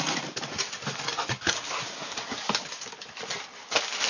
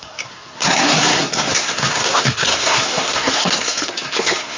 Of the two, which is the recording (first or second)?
first